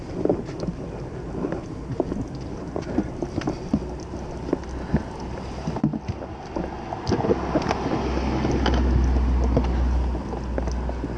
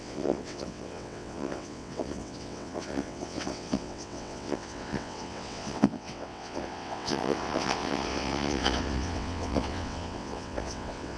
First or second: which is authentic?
first